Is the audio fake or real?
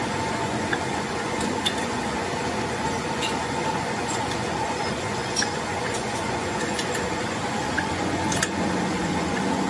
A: fake